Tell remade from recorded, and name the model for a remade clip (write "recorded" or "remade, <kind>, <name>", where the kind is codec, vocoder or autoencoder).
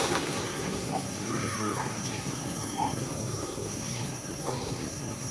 remade, codec, SNAC